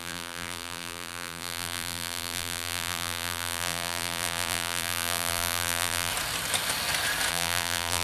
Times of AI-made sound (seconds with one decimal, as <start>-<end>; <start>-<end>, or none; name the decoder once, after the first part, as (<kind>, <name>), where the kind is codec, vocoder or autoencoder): 0.0-6.1 (vocoder, BigVGAN v2); 7.3-8.0